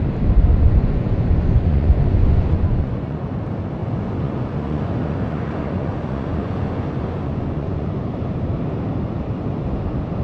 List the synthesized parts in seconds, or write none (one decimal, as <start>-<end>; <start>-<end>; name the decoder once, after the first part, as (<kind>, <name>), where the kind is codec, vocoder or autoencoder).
0.5-3.3 (vocoder, Vocos); 3.8-8.0